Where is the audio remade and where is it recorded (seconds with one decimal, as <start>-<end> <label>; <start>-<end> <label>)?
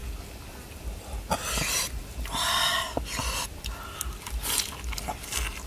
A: 0.0-5.7 recorded